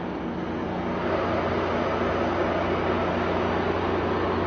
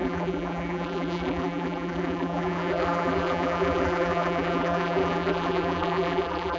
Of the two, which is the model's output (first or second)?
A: second